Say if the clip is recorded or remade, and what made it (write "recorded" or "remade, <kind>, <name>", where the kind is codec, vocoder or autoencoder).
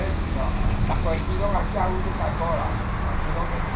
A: recorded